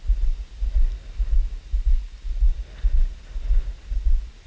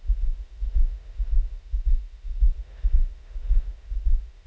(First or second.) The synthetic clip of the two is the second